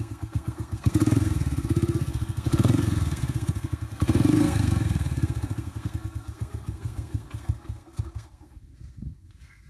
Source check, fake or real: fake